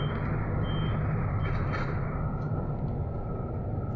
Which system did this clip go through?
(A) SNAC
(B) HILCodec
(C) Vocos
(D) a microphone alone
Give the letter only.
D